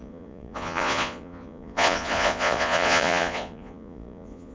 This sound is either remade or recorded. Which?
remade